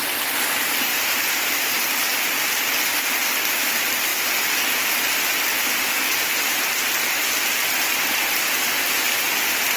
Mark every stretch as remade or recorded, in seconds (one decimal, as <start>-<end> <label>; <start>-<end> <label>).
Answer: 0.0-0.9 recorded; 0.9-3.2 remade; 3.2-9.8 recorded